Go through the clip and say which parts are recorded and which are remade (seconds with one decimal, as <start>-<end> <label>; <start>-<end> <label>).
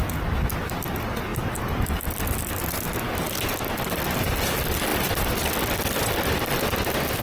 0.0-4.9 recorded; 4.9-5.4 remade; 5.4-7.2 recorded